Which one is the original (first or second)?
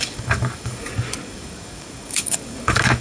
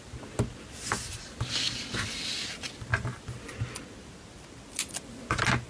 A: second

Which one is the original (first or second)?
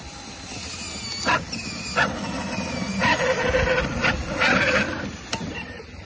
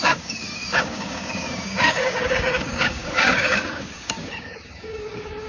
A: first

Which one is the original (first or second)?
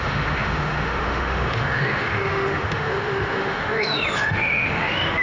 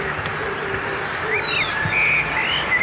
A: second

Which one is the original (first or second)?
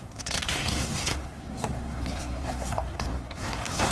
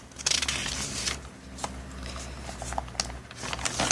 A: second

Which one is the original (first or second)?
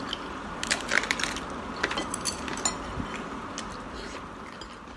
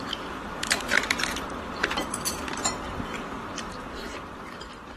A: first